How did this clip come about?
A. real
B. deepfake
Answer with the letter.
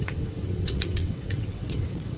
B